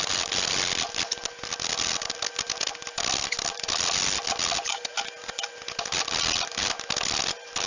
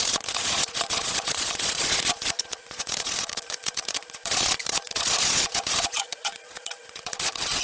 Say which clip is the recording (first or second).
first